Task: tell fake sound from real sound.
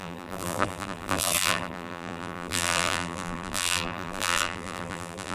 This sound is fake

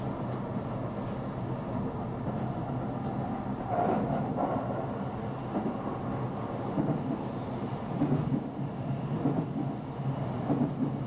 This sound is real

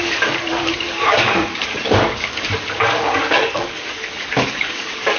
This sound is fake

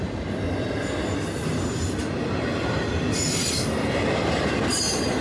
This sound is real